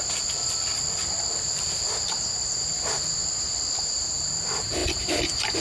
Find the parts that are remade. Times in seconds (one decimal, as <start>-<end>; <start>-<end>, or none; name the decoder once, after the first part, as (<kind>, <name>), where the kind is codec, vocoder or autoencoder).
none